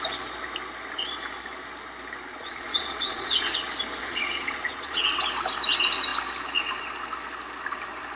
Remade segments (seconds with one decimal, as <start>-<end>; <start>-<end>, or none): 2.3-3.5; 4.0-5.0